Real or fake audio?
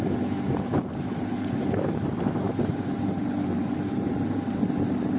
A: fake